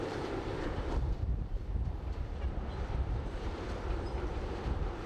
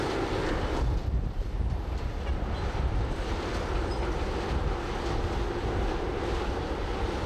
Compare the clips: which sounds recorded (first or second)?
second